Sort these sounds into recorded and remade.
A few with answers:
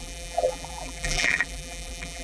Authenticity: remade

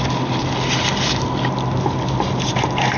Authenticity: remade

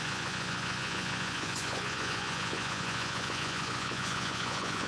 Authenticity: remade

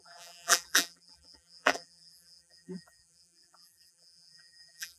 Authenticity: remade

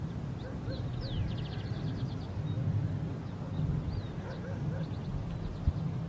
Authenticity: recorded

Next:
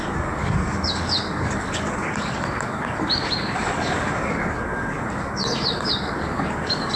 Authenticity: remade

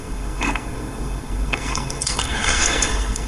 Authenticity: remade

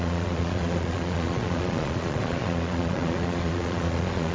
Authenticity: remade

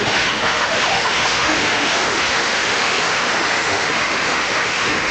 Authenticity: remade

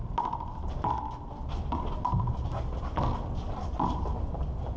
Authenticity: recorded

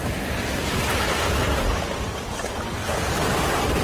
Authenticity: recorded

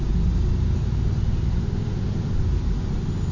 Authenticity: recorded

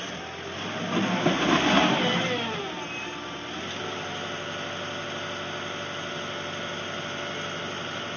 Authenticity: recorded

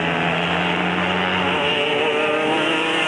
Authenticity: recorded